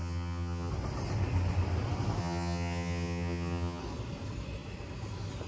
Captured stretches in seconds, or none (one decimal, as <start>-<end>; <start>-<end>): 0.7-2.2; 3.8-5.5